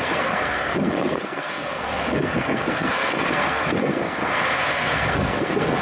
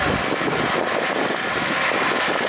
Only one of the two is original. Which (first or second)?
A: second